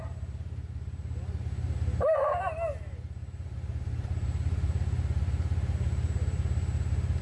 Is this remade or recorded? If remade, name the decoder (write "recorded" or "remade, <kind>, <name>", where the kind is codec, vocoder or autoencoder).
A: recorded